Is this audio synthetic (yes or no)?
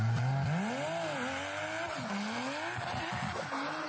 no